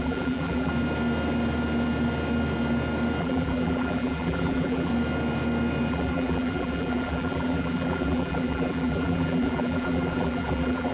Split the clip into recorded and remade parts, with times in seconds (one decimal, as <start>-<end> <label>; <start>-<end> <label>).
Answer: 0.0-0.7 remade; 0.7-3.2 recorded; 3.2-4.9 remade; 4.9-5.9 recorded; 5.9-10.9 remade